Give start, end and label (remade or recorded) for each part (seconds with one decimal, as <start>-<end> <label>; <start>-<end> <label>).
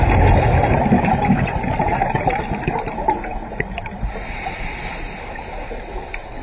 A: 0.0-0.6 recorded; 0.6-4.4 remade; 4.4-4.9 recorded; 4.9-5.6 remade; 5.6-6.4 recorded